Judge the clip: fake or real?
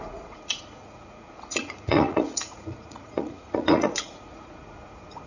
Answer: fake